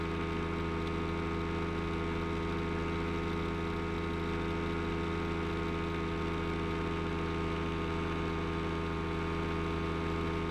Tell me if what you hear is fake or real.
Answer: real